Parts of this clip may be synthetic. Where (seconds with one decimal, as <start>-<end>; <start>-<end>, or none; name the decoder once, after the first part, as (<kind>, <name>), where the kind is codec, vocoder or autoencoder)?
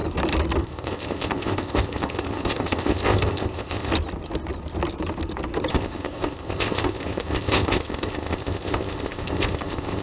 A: 0.6-3.9 (codec, ZipCodec); 5.7-10.0